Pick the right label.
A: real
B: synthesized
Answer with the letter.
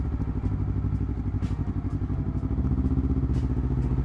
A